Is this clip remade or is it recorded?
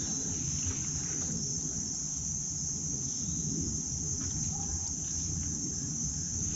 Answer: remade